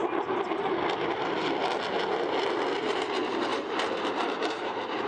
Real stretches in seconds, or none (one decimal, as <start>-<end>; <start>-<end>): 0.0-2.8